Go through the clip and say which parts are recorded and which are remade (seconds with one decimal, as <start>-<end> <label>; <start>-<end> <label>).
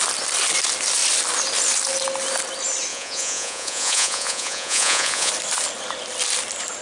0.0-2.9 recorded; 2.9-5.3 remade; 5.3-6.8 recorded